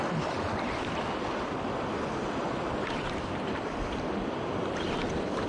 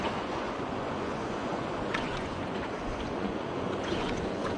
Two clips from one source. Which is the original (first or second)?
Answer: first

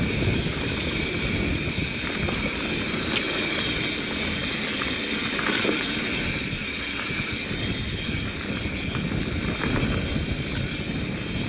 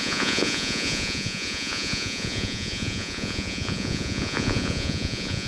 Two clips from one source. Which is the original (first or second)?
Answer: first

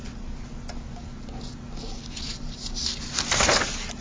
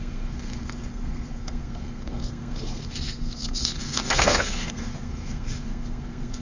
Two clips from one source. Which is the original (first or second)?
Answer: first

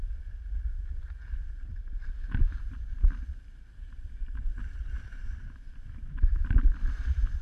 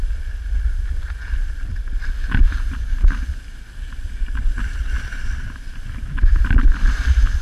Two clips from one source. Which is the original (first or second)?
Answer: second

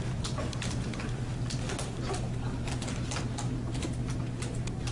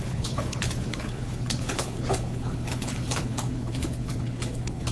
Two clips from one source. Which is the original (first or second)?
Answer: first